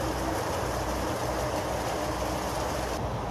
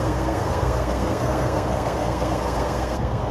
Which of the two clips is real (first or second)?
first